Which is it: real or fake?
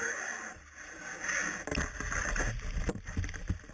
real